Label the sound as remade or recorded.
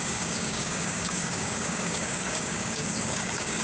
remade